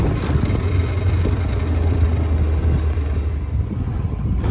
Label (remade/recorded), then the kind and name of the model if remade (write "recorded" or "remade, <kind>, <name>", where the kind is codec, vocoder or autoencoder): recorded